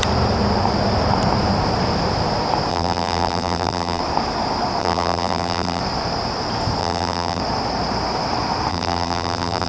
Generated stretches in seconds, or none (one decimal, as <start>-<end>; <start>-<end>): 2.7-4.0; 4.8-5.8; 6.8-7.4; 8.7-9.7